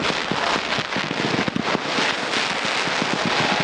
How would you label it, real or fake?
real